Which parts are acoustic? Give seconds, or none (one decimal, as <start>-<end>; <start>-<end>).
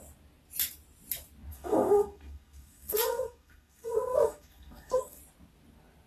0.0-1.5; 5.2-6.1